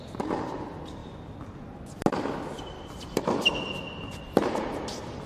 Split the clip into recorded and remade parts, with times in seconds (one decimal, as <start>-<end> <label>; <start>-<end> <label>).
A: 0.0-5.3 recorded